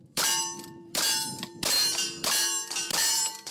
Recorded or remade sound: remade